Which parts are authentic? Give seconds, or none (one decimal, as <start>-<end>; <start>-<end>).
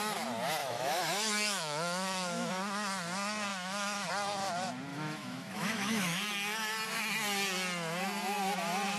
0.0-0.6; 2.5-3.5; 4.1-4.9; 6.3-9.0